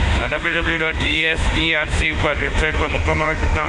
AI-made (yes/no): yes